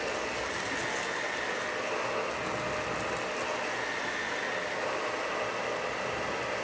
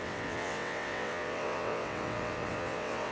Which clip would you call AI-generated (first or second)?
second